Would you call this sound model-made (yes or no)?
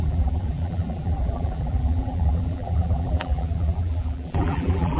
yes